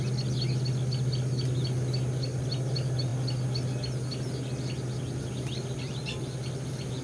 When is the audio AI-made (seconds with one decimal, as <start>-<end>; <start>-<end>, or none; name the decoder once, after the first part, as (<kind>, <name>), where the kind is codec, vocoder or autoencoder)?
none